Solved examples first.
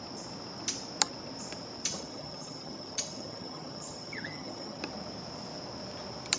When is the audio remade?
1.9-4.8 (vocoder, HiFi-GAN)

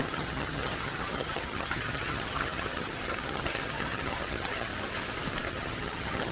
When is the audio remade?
0.0-4.7 (vocoder, HiFi-GAN); 5.5-6.3

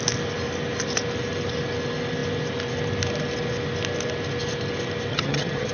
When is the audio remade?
5.1-5.7 (vocoder, HiFi-GAN)

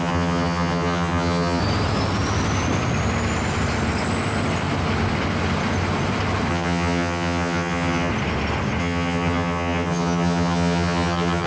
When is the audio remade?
0.0-1.6 (vocoder, HiFi-GAN); 6.5-8.1; 8.8-11.5